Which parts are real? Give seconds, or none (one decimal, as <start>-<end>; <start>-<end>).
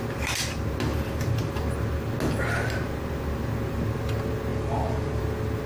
0.0-0.9; 1.5-4.5; 5.2-5.7